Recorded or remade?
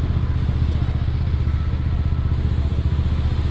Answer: recorded